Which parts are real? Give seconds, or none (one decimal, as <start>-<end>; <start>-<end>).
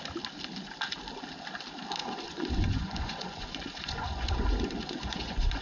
0.0-2.0